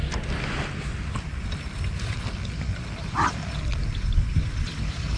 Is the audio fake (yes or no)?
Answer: no